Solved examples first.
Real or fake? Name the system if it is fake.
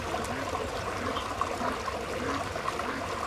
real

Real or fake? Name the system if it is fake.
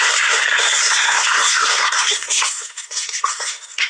fake, codec, SNAC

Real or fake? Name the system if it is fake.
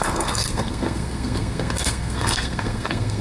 fake, codec, SNAC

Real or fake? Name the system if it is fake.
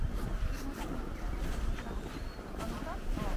real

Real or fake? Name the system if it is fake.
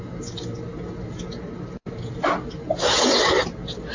real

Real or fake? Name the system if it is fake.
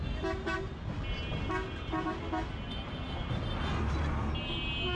real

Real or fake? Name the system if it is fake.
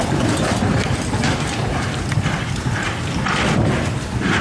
fake, vocoder, BigVGAN v2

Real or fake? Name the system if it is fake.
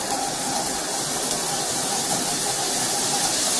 real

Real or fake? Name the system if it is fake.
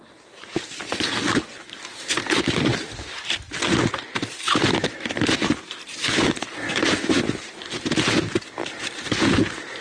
real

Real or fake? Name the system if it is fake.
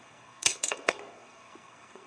fake, codec, SNAC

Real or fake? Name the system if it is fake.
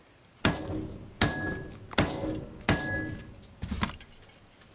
real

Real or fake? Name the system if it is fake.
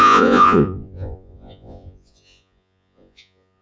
fake, vocoder, Vocos